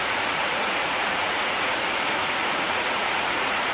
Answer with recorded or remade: remade